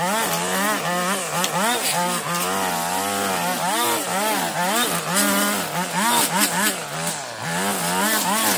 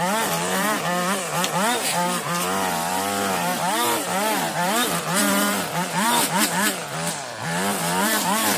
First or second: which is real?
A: first